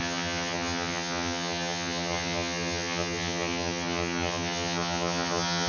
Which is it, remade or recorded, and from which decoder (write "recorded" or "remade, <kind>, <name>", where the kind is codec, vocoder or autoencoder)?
remade, vocoder, HiFi-GAN